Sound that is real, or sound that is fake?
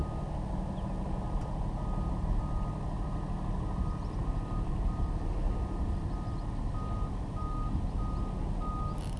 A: real